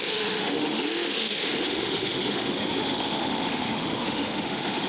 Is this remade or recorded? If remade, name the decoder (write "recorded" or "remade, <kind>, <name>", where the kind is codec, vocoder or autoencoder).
remade, autoencoder, DAC-VAE